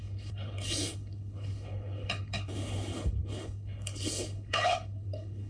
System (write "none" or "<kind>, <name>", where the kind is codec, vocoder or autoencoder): codec, HILCodec